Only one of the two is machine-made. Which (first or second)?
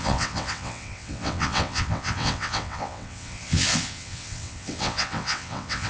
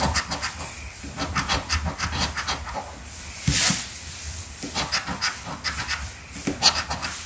first